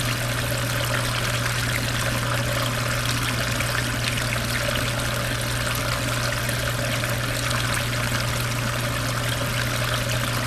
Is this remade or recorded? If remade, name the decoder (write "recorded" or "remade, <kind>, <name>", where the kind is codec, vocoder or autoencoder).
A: recorded